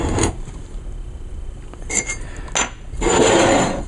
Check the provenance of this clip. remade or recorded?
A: recorded